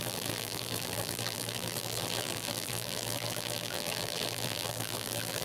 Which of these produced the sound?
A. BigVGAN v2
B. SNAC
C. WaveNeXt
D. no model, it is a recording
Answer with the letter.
A